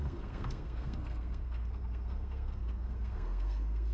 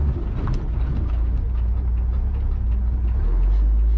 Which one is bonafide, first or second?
second